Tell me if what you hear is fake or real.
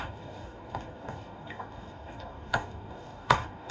fake